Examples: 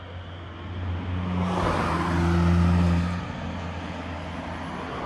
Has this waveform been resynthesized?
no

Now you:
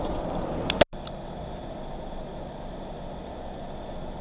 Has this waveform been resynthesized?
no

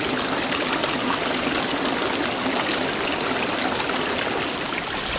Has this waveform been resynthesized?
no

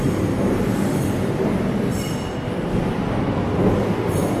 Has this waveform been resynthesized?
no